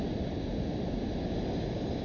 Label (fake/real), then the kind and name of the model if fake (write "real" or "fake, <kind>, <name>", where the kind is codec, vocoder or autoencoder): real